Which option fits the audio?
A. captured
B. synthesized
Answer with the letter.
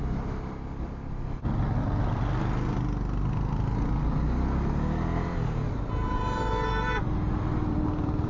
A